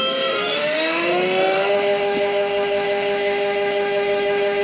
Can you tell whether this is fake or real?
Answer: fake